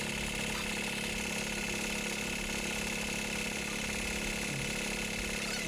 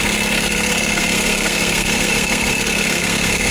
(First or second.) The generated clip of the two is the second